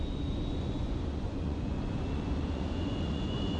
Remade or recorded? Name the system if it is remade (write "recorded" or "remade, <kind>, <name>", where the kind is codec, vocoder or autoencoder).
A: remade, vocoder, Vocos